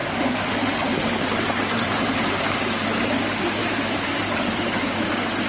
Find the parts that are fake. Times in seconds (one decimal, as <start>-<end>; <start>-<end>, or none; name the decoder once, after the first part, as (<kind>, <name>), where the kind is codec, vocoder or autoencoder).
0.0-2.4 (vocoder, BigVGAN v2); 3.6-4.8